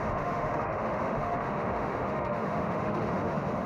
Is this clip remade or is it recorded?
remade